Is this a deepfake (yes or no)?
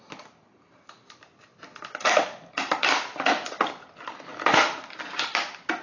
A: no